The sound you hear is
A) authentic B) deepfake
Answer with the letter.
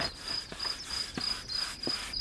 A